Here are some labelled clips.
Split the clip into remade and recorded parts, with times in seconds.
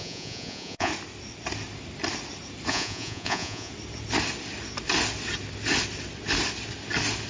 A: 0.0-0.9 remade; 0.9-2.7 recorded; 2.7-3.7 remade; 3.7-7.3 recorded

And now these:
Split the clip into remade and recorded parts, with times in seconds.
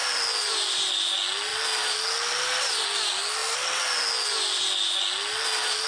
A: 0.0-5.9 recorded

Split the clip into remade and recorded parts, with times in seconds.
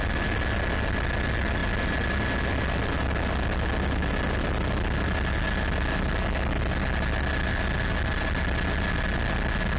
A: 0.0-9.8 recorded